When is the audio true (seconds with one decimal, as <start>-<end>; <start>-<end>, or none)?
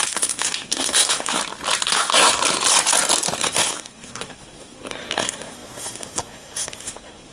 1.4-1.9; 2.4-3.4